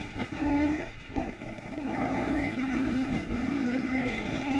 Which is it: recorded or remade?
remade